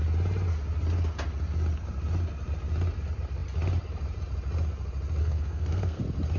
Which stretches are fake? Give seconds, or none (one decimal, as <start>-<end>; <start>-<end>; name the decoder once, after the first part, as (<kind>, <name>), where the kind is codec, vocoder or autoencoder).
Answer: 5.2-6.0 (codec, SNAC)